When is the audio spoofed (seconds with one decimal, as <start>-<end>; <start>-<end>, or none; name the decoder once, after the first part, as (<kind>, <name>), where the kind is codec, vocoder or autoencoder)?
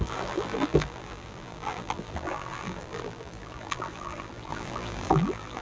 0.0-5.6 (vocoder, BigVGAN v2)